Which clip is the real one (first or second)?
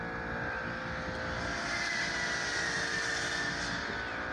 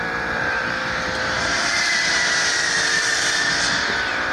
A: first